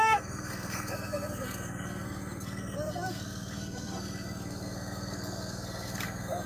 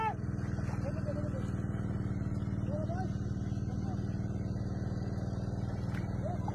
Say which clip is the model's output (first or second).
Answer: first